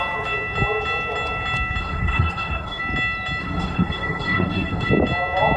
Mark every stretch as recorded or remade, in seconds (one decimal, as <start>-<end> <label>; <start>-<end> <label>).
0.0-1.8 recorded; 1.8-2.8 remade; 2.8-3.4 recorded; 3.4-4.9 remade; 4.9-5.6 recorded